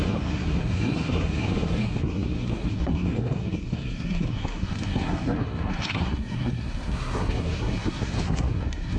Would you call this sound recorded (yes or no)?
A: no